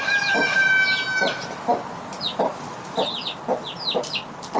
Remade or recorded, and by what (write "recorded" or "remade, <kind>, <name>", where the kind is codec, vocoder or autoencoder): recorded